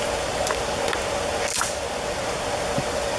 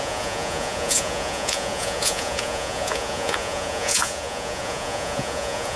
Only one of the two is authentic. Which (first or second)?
first